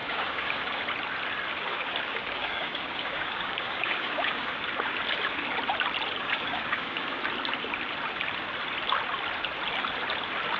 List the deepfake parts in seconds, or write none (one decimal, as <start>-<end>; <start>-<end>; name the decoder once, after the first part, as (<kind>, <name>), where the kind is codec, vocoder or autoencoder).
0.0-0.8 (codec, DAC); 1.7-4.5; 6.2-7.2